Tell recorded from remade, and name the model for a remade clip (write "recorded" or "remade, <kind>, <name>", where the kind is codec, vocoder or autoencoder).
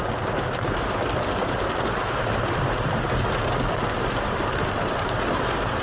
recorded